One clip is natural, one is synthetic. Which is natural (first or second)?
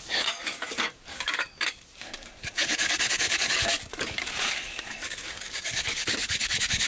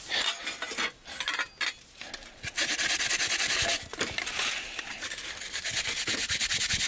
second